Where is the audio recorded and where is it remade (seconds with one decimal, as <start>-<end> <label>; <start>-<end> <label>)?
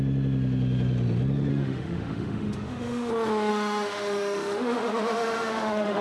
0.0-1.5 recorded; 1.5-3.1 remade; 3.1-3.5 recorded; 3.5-6.0 remade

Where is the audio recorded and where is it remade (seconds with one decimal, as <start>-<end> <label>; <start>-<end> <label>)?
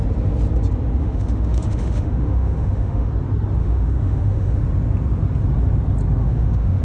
0.0-1.0 recorded; 1.0-3.1 remade; 3.1-3.6 recorded; 3.6-4.6 remade; 4.6-6.2 recorded; 6.2-6.8 remade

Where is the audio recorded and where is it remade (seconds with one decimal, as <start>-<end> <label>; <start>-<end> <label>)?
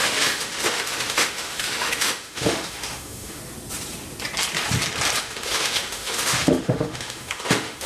0.0-3.4 remade; 3.4-5.2 recorded; 5.2-7.9 remade